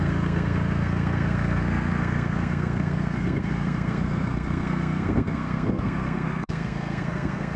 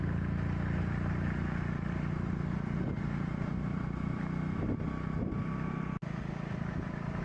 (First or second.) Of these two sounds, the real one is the second